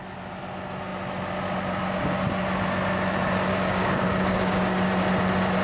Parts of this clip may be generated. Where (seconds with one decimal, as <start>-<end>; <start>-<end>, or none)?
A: 3.5-4.8

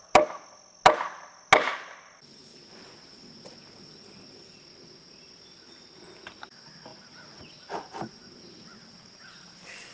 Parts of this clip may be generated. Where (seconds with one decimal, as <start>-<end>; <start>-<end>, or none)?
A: none

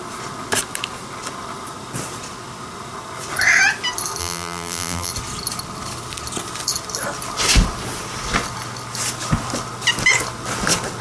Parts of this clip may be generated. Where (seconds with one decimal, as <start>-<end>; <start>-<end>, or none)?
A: 4.2-5.1

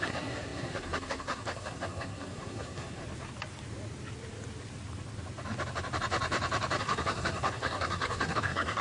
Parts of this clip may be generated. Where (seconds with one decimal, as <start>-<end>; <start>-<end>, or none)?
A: 0.0-3.0; 6.8-8.8

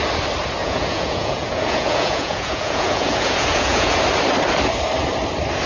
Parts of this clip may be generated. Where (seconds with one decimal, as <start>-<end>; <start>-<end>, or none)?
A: 0.6-4.0